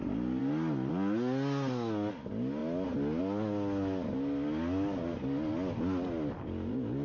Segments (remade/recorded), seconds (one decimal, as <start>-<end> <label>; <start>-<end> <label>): 0.0-7.0 recorded